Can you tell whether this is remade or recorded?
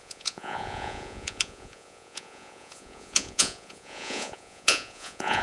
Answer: remade